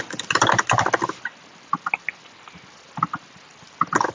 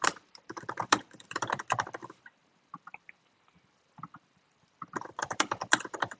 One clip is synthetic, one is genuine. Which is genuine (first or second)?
first